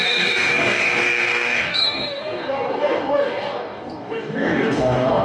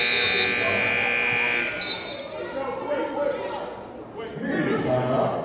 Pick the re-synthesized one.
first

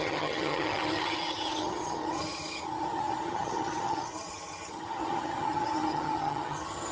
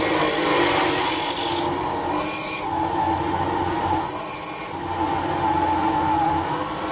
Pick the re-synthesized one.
first